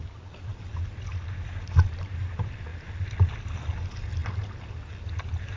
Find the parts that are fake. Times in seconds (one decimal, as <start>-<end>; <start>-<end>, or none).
none